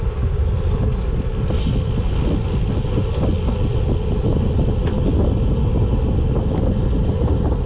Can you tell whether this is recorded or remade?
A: recorded